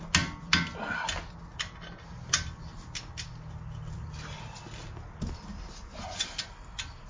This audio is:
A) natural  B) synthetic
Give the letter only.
A